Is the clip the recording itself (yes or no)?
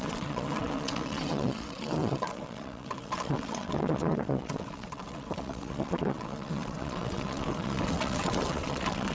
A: no